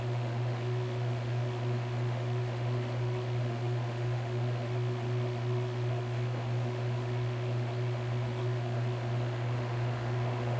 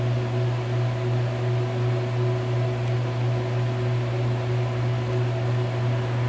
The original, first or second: second